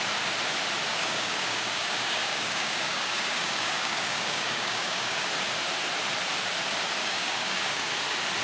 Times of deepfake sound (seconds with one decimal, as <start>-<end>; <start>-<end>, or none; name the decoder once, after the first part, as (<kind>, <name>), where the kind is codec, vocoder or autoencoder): 0.9-5.3 (codec, DAC); 7.0-8.0